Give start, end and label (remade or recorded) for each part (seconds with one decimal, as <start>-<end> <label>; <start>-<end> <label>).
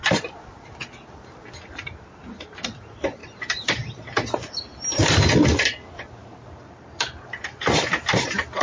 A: 0.0-0.8 remade; 0.8-6.2 recorded; 6.2-7.1 remade; 7.1-8.6 recorded